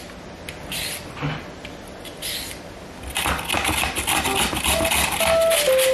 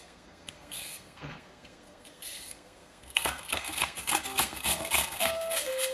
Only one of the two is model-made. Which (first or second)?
second